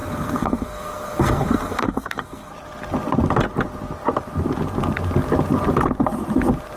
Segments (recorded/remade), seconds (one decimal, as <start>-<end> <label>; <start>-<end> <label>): 0.0-2.5 remade; 2.5-6.8 recorded